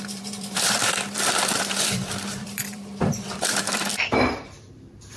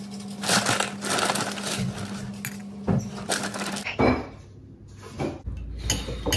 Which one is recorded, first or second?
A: second